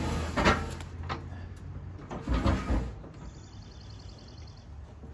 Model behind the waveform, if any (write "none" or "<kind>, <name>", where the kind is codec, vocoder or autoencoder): none